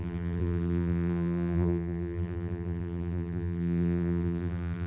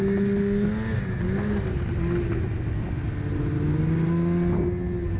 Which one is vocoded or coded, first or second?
first